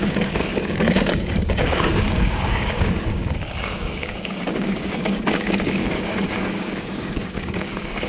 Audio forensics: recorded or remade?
remade